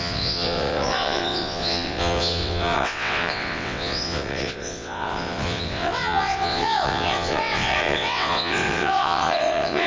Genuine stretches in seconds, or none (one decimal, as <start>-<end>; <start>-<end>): none